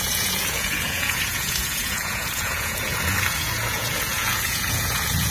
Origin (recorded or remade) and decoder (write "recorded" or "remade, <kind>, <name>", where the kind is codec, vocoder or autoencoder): remade, vocoder, Vocos